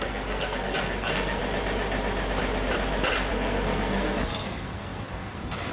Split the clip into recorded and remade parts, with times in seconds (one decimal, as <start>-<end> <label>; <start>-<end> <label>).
0.0-1.4 remade; 1.4-3.3 recorded; 3.3-5.7 remade